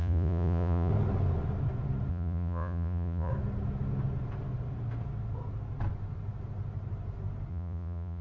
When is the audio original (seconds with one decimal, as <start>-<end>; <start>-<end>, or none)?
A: 0.9-2.1; 3.3-7.5